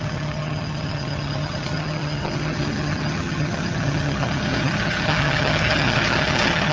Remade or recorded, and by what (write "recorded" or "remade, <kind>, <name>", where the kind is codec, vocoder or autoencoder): remade, vocoder, HiFi-GAN